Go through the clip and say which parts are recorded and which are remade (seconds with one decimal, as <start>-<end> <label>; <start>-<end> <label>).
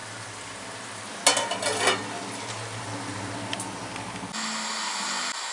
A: 0.0-5.5 recorded